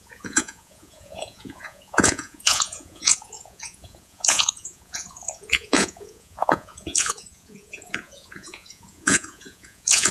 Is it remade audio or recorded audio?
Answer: remade